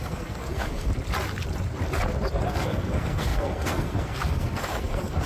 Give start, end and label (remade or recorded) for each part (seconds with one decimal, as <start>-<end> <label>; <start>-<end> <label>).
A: 0.0-0.9 remade; 0.9-2.5 recorded; 2.5-5.3 remade